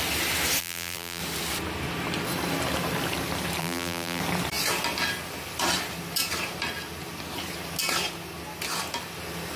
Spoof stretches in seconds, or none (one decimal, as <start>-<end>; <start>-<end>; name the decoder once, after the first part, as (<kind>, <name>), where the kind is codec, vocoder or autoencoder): 0.6-1.2 (vocoder, BigVGAN v2); 3.6-4.2